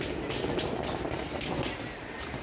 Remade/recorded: recorded